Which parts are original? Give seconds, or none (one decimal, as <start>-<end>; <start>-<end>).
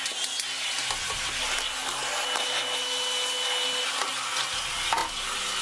0.0-5.6